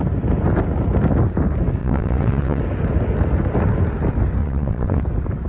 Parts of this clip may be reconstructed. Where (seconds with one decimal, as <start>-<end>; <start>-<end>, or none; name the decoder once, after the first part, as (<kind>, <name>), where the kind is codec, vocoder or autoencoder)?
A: 1.8-2.6 (vocoder, WaveNeXt); 4.4-5.0